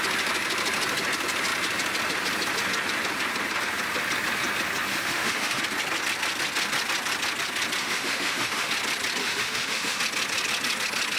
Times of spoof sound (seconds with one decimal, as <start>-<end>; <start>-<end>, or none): 4.9-5.6; 7.8-8.7; 9.2-10.0